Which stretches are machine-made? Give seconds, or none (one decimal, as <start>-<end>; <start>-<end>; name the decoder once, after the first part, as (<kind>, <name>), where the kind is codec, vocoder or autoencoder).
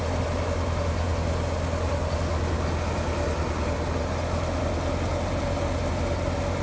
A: none